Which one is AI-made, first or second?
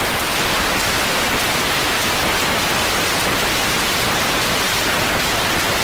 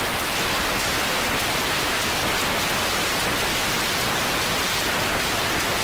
first